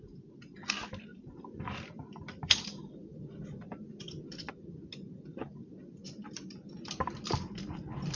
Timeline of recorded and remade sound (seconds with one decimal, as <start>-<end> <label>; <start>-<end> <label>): 0.0-1.1 recorded; 1.1-4.5 remade; 4.5-5.3 recorded; 5.3-7.1 remade; 7.1-8.1 recorded